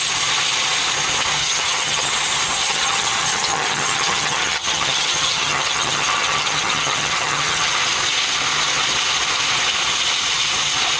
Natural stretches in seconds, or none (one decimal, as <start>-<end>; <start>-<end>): 0.0-1.4; 2.1-2.6; 7.7-11.0